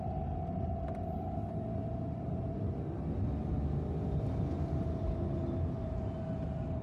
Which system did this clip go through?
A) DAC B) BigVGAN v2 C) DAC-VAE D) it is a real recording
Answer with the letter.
D